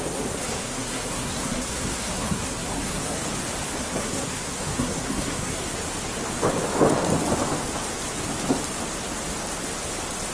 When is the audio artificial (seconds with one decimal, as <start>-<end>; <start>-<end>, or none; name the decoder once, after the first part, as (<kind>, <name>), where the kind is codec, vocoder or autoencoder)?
0.0-3.2 (codec, SNAC); 3.8-5.6